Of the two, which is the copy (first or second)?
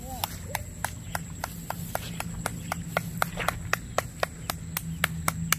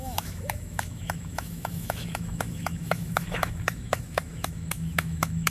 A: second